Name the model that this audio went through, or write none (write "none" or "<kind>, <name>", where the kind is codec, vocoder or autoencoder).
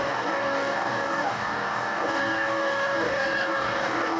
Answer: codec, DAC